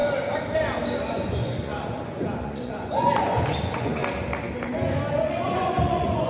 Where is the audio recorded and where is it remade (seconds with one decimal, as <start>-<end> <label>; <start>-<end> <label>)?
0.0-1.1 recorded; 1.1-4.0 remade; 4.0-5.2 recorded; 5.2-6.3 remade